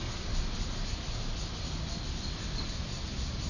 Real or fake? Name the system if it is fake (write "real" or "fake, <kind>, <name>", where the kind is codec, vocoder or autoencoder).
real